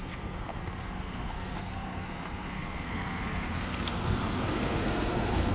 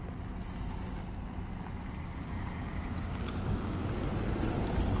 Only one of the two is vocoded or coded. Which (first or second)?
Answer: first